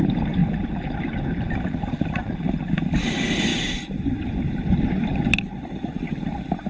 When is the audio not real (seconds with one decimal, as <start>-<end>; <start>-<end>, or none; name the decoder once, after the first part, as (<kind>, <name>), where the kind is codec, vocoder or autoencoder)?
none